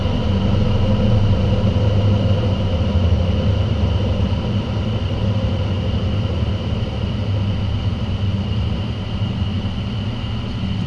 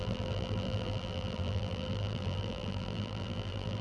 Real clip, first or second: first